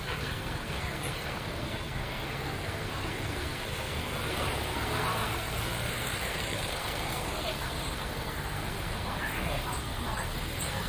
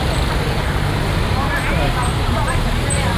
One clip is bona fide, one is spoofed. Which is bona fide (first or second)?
second